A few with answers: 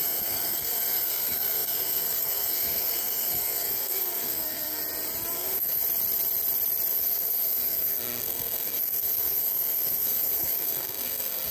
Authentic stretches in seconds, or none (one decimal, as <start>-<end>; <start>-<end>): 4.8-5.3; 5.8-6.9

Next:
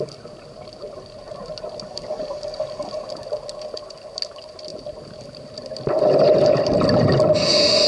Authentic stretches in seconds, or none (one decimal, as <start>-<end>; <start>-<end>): 0.0-7.9

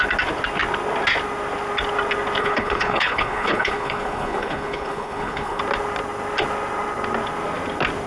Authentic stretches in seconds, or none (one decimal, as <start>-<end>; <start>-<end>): 0.0-2.4; 5.6-8.1

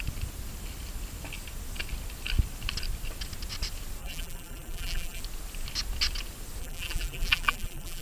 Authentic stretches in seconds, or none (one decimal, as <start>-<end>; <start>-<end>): 0.0-4.0; 5.2-6.6